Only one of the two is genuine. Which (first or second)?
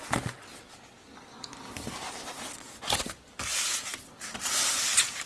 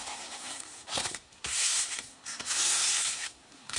first